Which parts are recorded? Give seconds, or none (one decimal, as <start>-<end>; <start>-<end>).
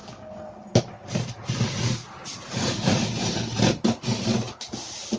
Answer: 0.0-2.2; 3.0-5.2